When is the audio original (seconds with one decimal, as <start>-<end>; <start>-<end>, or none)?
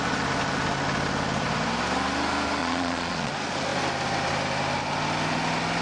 0.0-2.6; 3.3-5.8